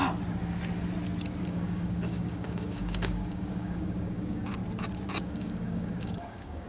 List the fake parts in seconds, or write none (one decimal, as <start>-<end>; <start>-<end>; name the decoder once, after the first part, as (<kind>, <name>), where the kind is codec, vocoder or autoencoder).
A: 1.4-4.6 (codec, DAC); 5.2-6.7